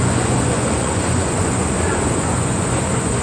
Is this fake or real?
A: fake